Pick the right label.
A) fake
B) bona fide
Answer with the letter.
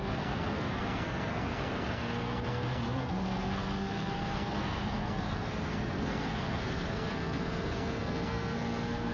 A